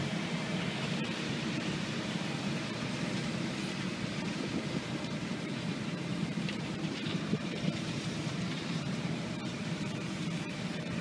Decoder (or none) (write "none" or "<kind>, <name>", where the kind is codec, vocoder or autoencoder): vocoder, BigVGAN v2